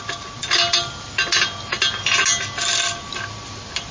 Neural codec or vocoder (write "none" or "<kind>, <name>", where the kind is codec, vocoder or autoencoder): none